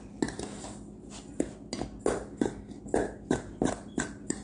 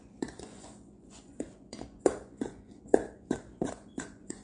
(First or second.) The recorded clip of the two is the first